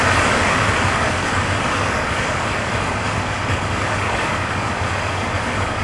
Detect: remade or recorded remade